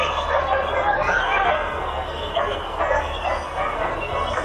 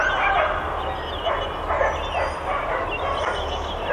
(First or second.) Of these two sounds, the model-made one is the first